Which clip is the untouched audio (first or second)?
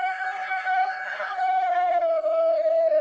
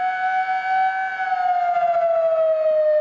second